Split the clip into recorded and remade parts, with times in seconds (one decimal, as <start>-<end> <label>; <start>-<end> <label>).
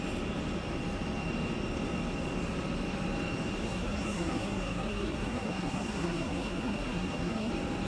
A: 0.0-3.6 recorded; 3.6-7.5 remade; 7.5-7.9 recorded